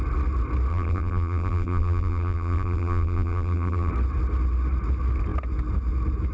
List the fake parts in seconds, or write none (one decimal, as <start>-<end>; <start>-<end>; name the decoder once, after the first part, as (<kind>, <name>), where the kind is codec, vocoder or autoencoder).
0.7-3.9 (vocoder, BigVGAN v2)

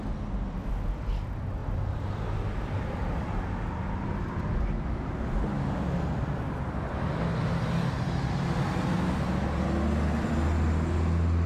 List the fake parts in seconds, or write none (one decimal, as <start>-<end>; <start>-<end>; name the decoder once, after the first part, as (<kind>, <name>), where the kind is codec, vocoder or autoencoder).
1.6-2.1 (vocoder, BigVGAN v2)

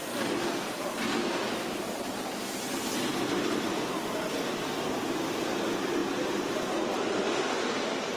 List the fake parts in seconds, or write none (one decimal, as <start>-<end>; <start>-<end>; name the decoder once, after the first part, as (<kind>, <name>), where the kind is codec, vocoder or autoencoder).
none